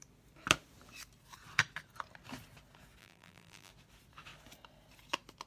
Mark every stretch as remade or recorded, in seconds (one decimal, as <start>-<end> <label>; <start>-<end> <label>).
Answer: 0.0-3.0 recorded; 3.0-3.7 remade; 3.7-5.5 recorded